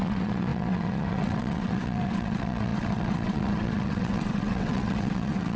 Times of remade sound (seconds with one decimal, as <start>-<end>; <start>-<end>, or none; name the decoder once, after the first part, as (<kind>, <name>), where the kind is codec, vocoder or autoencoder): 0.0-5.6 (vocoder, WaveNeXt)